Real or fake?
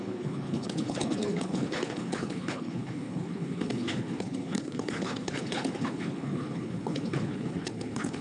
fake